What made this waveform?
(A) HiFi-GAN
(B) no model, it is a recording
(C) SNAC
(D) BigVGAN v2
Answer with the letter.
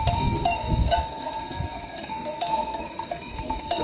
C